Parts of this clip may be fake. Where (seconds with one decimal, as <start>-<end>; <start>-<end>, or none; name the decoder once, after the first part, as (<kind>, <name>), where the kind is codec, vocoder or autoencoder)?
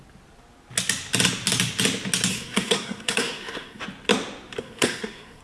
2.3-3.8 (codec, SNAC); 4.6-5.4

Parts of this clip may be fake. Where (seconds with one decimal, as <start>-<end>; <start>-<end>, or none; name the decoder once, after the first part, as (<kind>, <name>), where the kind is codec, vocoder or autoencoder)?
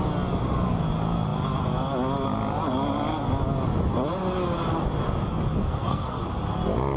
5.6-6.2 (codec, SNAC)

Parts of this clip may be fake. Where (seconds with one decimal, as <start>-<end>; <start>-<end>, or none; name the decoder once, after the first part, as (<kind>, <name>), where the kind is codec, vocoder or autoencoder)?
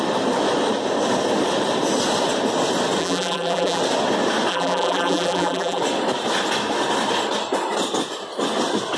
3.0-3.8 (vocoder, BigVGAN v2); 4.5-5.8